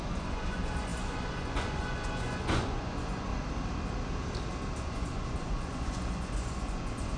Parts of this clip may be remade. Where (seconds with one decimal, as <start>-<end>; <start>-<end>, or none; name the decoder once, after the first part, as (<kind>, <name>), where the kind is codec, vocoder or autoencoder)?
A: 0.0-3.3 (vocoder, Vocos); 4.8-7.2